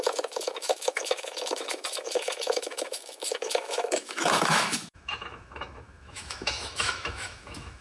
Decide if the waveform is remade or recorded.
remade